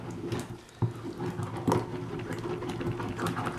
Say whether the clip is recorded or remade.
recorded